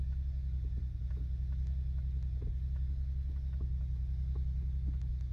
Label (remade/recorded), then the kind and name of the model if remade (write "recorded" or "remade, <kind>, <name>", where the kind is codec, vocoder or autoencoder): recorded